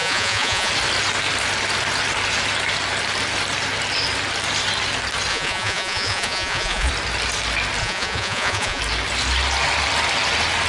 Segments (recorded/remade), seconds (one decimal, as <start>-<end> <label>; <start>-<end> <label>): 0.0-0.7 remade; 0.7-5.3 recorded; 5.3-6.9 remade; 6.9-7.8 recorded; 7.8-8.8 remade; 8.8-10.7 recorded